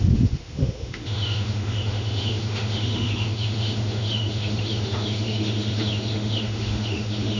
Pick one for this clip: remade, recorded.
remade